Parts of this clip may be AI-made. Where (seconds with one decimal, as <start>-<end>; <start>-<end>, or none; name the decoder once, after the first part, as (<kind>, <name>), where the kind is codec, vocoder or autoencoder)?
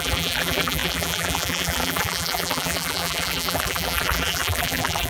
0.0-5.1 (vocoder, BigVGAN v2)